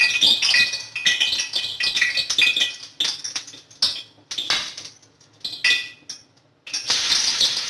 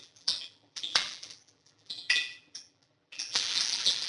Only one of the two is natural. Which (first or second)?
first